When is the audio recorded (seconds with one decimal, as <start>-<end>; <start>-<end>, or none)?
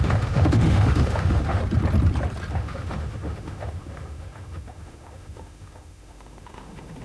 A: 1.6-2.5